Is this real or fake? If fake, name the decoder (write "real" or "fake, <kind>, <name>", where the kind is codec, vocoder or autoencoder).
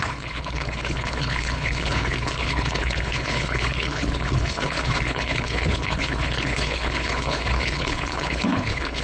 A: fake, codec, HILCodec